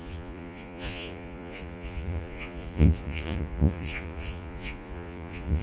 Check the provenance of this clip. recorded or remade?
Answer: remade